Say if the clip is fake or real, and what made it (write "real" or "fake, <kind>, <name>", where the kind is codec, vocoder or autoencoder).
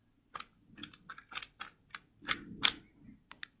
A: real